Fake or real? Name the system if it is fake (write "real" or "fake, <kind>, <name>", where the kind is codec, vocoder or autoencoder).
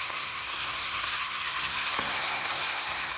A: fake, codec, SNAC